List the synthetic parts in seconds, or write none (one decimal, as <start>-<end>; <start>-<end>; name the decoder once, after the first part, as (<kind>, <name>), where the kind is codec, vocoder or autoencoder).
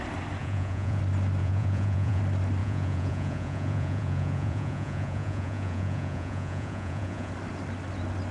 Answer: 0.4-1.0 (vocoder, Vocos); 1.4-2.2; 2.6-7.3